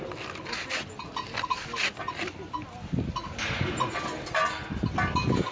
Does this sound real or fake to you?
real